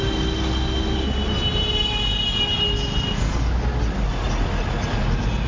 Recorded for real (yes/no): yes